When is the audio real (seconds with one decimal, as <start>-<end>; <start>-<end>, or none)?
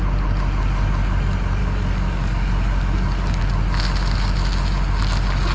0.0-1.6; 3.4-5.5